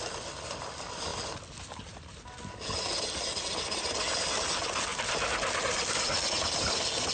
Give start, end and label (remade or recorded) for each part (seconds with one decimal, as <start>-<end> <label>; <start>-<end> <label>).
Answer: 0.0-7.1 recorded